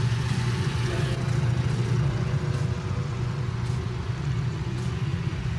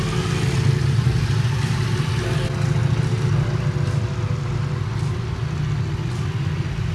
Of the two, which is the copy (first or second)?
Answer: first